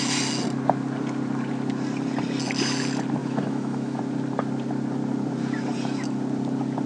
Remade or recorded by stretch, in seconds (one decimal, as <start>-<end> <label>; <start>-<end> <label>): 0.0-3.2 recorded; 3.2-4.0 remade; 4.0-6.9 recorded